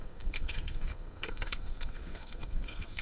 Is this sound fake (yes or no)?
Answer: yes